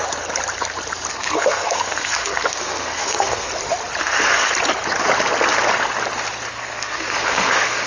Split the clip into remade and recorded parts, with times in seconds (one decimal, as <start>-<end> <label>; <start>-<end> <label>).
0.0-1.1 recorded; 1.1-3.5 remade; 3.5-4.0 recorded; 4.0-4.5 remade; 4.5-6.5 recorded; 6.5-7.9 remade